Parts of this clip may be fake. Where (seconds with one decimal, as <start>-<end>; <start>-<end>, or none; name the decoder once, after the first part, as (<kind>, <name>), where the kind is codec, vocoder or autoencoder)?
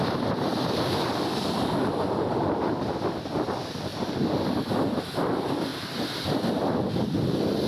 none